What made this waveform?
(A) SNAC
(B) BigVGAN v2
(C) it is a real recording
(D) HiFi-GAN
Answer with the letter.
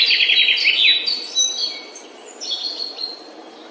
C